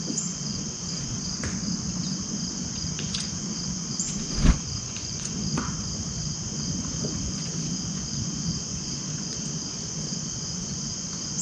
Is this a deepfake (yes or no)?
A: yes